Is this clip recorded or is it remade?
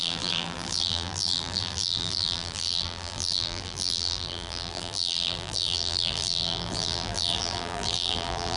remade